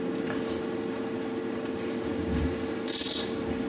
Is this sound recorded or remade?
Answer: recorded